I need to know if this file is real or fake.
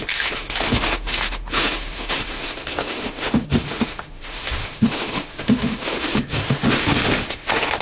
fake